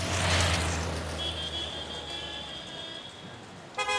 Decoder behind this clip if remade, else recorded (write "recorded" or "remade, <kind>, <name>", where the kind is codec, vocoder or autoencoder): recorded